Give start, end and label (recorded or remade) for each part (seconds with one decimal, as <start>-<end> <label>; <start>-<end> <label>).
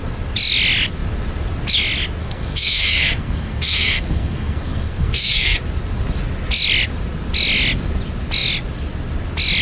0.0-2.2 recorded; 2.2-5.6 remade; 5.6-9.6 recorded